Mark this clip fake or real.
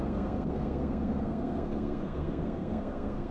fake